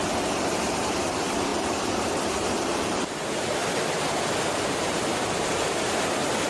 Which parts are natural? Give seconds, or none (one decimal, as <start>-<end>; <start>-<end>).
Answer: 0.0-1.5; 3.1-6.5